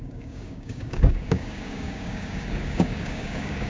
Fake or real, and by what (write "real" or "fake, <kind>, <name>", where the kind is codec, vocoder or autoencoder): fake, codec, DAC